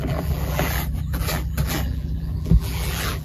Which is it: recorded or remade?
remade